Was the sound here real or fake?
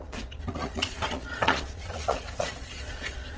fake